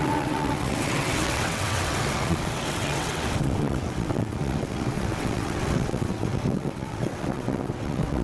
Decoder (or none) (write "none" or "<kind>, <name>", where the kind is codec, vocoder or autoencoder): vocoder, WaveNeXt